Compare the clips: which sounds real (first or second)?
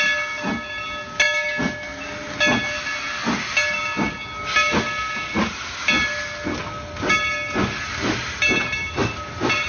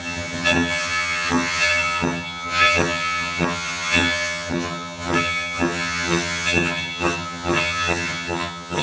first